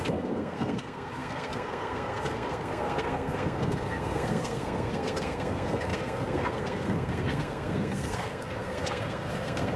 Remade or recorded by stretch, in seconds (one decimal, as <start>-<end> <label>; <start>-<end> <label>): 0.0-9.8 remade